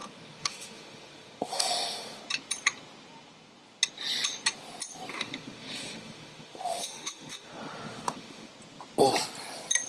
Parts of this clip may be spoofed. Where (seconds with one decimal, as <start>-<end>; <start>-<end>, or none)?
0.0-2.2; 5.1-8.5